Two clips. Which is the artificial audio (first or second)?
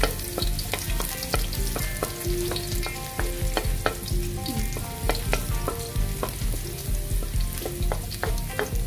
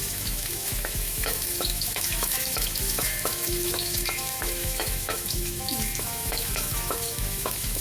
second